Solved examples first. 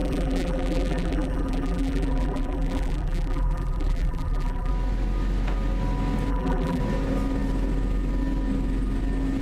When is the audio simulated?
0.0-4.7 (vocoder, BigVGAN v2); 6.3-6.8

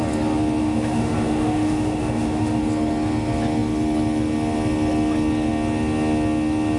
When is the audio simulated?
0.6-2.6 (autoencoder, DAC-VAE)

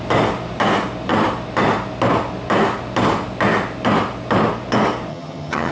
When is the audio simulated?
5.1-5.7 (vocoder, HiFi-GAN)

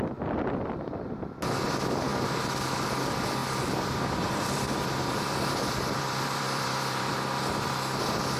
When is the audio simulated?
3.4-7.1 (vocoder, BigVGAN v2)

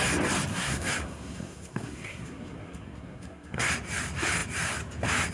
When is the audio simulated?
0.5-3.7 (codec, SNAC)

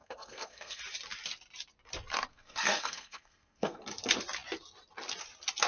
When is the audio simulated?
0.0-0.8 (codec, SNAC); 2.3-3.8

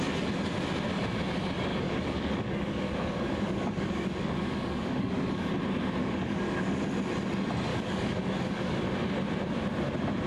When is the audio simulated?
1.7-5.5 (codec, DAC); 6.0-6.8; 7.7-8.8